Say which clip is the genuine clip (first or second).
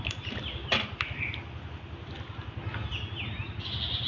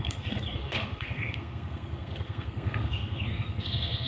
first